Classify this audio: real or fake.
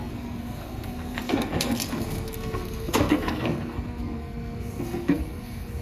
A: fake